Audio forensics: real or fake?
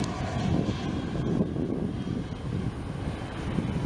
real